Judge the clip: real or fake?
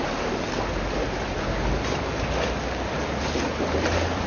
real